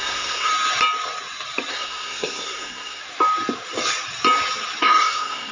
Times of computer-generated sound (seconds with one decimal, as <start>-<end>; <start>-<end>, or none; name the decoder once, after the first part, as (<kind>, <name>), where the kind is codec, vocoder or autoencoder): 0.0-0.5 (codec, SNAC); 1.7-3.0; 4.8-5.5